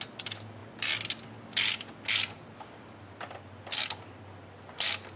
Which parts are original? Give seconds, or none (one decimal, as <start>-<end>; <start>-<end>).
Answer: 0.0-5.2